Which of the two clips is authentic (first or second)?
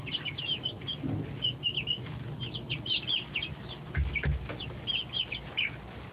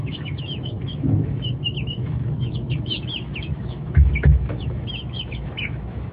first